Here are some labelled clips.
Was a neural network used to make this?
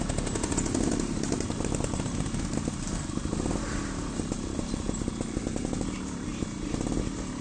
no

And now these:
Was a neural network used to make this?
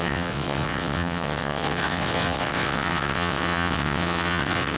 yes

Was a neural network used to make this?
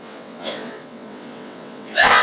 yes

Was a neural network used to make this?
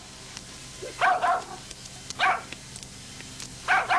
no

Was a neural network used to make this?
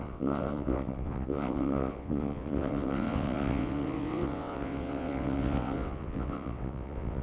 yes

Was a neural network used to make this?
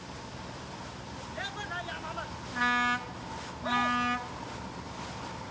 no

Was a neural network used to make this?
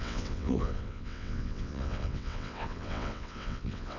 yes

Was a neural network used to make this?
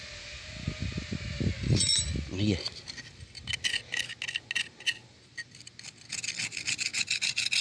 no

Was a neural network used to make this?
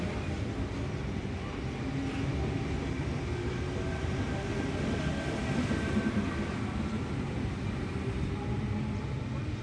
no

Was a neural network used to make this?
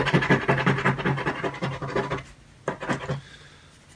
no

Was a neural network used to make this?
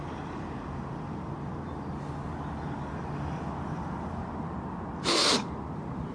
no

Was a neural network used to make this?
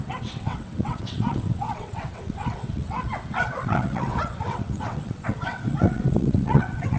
yes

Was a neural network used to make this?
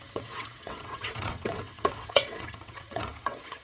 yes